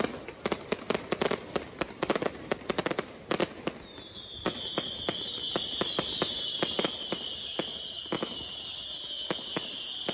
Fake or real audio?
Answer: real